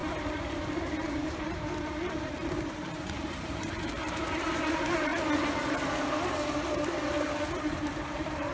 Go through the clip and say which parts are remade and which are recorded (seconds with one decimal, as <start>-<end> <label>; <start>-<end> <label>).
0.0-0.7 recorded; 0.7-5.1 remade; 5.1-7.7 recorded; 7.7-8.5 remade